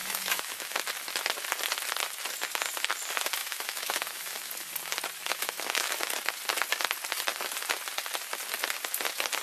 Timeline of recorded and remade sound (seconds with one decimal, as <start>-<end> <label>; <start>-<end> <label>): 0.0-0.8 remade; 0.8-3.4 recorded; 3.4-4.5 remade; 4.5-5.2 recorded; 5.2-6.0 remade; 6.0-9.4 recorded